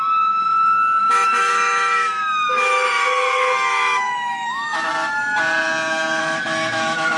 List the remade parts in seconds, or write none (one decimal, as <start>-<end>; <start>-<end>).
1.0-4.9; 6.2-7.2